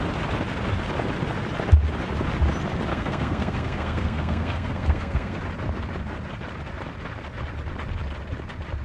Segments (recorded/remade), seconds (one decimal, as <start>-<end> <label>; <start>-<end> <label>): 0.0-2.9 recorded; 2.9-5.4 remade; 5.4-8.8 recorded